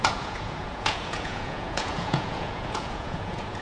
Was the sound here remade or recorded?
remade